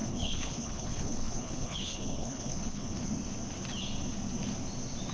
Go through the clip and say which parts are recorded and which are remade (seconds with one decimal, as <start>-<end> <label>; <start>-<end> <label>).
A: 0.0-3.1 remade; 3.1-5.1 recorded